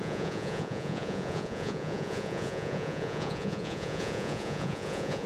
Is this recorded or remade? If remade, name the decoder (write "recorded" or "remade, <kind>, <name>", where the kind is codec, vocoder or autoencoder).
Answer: remade, vocoder, Vocos